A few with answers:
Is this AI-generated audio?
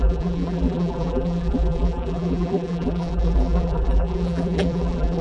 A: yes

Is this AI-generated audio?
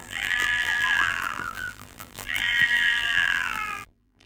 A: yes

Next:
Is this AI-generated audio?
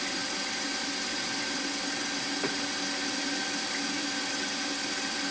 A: no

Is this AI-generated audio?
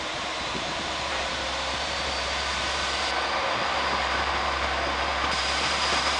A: yes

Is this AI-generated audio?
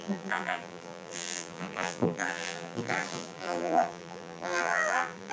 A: yes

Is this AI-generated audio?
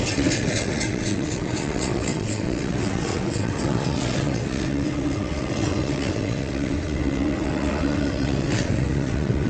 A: yes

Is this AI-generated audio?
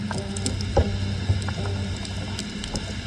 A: no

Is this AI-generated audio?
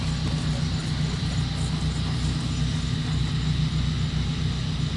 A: no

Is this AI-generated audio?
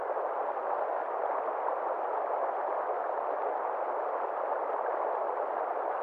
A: no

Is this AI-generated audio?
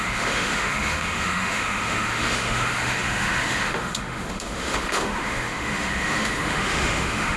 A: yes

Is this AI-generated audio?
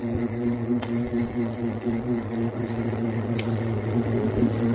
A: yes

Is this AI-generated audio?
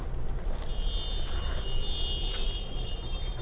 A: no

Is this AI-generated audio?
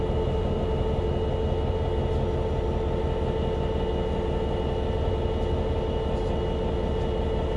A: no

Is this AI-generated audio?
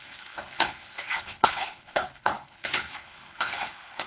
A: yes